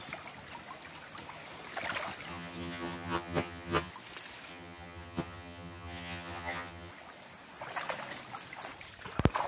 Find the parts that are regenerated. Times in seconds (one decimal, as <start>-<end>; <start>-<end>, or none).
2.3-3.9; 4.5-6.9